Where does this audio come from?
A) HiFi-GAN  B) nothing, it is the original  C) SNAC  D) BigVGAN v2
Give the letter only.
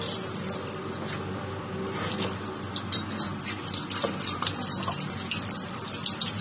B